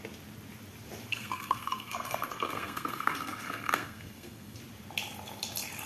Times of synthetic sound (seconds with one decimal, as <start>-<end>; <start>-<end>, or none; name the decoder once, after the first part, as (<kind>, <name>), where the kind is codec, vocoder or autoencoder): 1.1-4.6 (codec, SNAC)